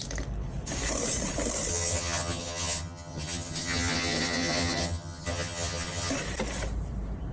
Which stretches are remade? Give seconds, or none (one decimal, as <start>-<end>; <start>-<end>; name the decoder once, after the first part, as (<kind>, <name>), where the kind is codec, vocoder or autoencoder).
1.7-6.1 (vocoder, HiFi-GAN)